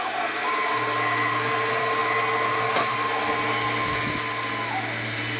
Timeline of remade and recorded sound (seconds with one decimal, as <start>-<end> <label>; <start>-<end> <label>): 0.0-5.4 recorded